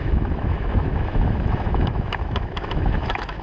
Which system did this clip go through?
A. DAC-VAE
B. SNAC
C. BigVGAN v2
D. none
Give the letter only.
A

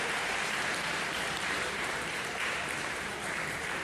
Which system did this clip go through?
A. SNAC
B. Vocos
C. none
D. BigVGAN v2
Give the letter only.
D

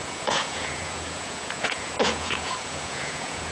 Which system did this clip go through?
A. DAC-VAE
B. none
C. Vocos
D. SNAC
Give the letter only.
C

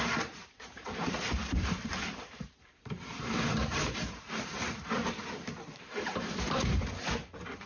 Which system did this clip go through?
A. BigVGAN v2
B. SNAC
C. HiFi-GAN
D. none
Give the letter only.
A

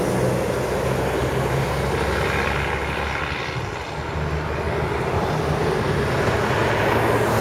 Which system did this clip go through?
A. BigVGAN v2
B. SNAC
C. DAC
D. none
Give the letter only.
D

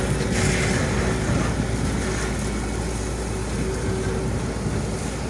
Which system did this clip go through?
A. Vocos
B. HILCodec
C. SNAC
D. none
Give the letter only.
D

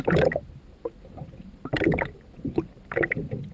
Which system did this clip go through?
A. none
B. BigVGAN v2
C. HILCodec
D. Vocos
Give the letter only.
A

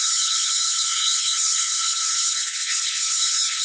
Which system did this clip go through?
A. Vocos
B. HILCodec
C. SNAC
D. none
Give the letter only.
B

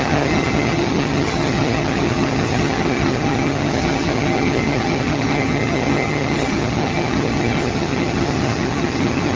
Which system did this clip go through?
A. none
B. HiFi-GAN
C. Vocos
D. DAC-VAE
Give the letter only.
B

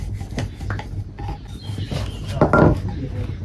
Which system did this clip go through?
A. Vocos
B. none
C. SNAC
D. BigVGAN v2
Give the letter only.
B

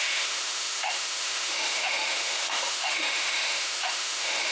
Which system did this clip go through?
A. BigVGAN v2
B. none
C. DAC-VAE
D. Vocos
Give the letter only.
C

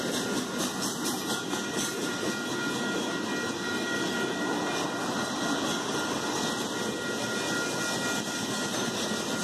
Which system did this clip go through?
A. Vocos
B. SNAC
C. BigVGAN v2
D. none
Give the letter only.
D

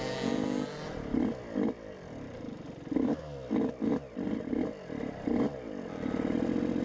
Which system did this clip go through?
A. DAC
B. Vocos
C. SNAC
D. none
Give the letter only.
D